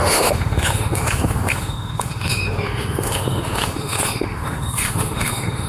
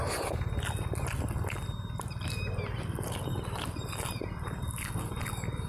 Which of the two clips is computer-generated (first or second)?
first